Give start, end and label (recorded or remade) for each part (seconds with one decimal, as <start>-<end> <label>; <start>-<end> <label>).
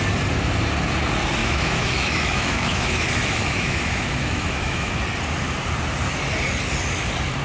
0.0-1.4 recorded; 1.4-4.9 remade; 4.9-7.4 recorded